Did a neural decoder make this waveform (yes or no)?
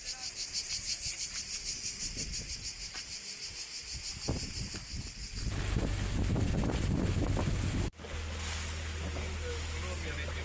no